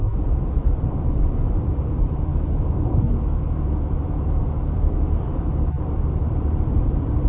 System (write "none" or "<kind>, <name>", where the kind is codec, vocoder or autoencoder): vocoder, BigVGAN v2